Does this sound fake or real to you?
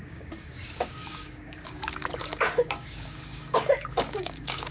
fake